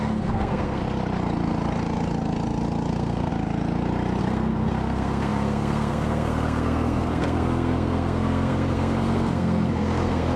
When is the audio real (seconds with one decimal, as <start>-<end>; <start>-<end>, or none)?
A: 0.8-2.9; 3.3-4.2